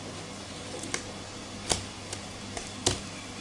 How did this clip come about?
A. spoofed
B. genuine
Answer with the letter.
B